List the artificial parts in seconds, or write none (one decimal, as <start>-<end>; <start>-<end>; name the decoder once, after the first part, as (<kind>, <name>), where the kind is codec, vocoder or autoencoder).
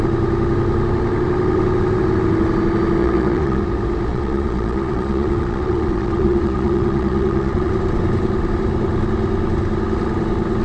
3.0-3.6 (vocoder, Vocos); 4.1-7.7